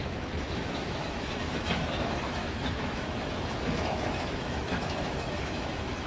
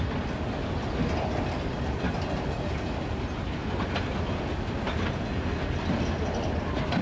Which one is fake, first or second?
first